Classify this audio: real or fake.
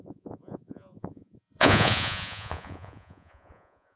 fake